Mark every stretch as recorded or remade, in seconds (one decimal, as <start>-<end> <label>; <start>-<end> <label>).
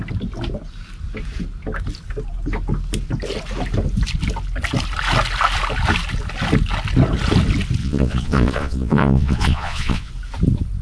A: 0.0-7.8 recorded; 7.8-10.1 remade; 10.1-10.8 recorded